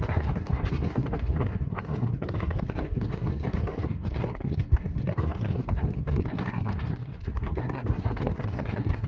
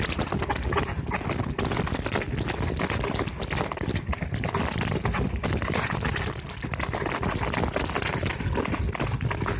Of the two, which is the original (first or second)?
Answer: second